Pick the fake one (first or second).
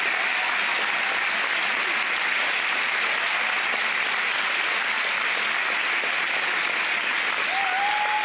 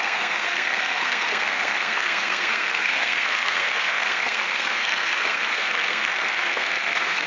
second